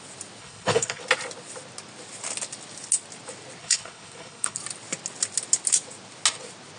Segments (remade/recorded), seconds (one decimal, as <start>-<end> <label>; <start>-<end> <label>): 0.0-0.4 recorded; 0.4-1.0 remade; 1.0-3.6 recorded; 3.6-4.6 remade; 4.6-6.8 recorded